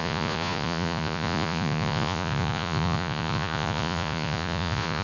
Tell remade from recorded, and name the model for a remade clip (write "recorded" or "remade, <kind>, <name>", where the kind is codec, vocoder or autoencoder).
remade, vocoder, Vocos